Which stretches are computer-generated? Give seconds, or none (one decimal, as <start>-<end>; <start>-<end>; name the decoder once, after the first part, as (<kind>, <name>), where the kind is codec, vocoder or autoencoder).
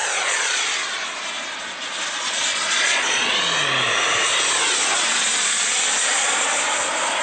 0.0-0.6 (vocoder, Vocos); 2.5-3.3